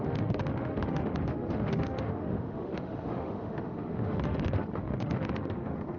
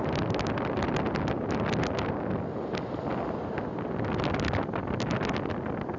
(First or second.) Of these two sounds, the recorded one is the second